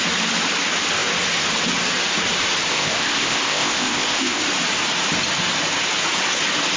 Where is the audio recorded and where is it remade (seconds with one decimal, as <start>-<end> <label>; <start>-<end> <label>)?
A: 0.0-2.7 recorded; 2.7-4.4 remade; 4.4-6.8 recorded